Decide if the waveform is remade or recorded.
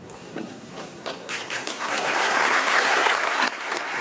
remade